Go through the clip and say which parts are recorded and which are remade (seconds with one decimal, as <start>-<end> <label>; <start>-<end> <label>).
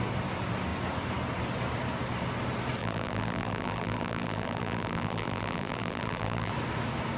0.0-2.8 recorded; 2.8-6.5 remade; 6.5-7.2 recorded